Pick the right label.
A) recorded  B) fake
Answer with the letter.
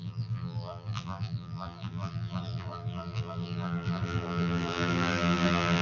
B